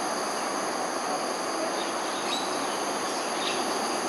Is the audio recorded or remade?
recorded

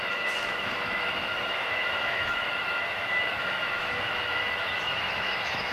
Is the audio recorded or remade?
remade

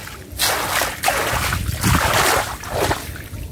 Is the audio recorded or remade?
recorded